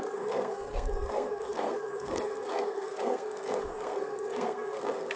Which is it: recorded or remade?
remade